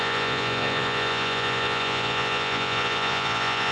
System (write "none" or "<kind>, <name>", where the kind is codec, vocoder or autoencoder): vocoder, Vocos